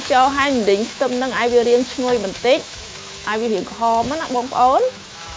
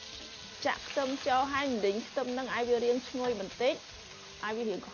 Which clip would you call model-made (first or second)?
first